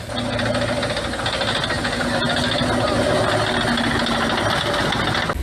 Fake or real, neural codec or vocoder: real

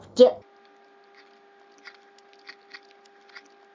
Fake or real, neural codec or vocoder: real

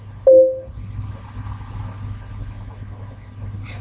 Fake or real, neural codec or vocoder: real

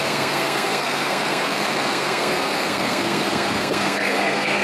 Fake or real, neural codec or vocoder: fake, codec, SNAC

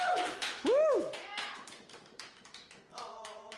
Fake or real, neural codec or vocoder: fake, autoencoder, DAC-VAE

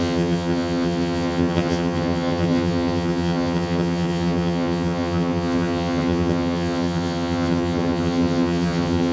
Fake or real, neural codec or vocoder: fake, vocoder, HiFi-GAN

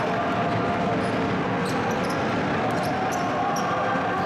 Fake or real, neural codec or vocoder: real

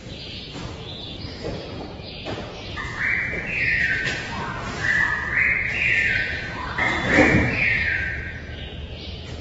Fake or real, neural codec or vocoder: fake, vocoder, Vocos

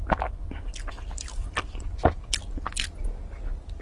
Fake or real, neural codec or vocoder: real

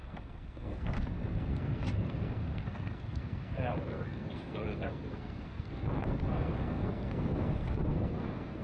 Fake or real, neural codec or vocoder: fake, codec, SNAC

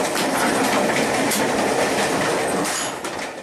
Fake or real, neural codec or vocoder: fake, vocoder, BigVGAN v2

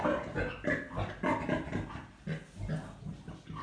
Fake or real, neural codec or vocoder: real